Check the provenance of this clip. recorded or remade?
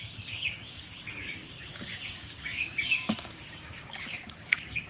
remade